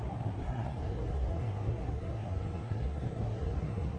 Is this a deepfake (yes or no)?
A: yes